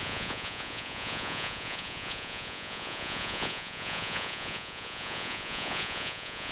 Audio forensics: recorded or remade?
remade